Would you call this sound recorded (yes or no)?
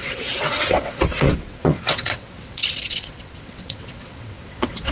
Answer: no